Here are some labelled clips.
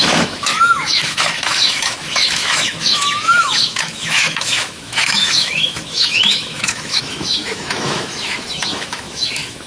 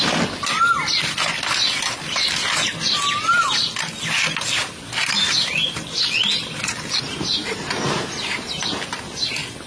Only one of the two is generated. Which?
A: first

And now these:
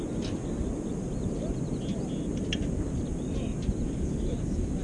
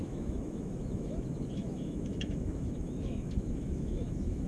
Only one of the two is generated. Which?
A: second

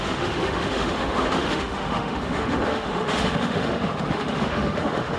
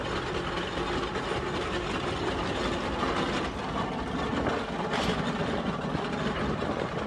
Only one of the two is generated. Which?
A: first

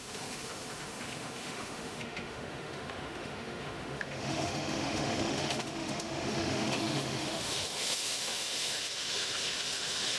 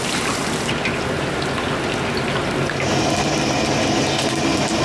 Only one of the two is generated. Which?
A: first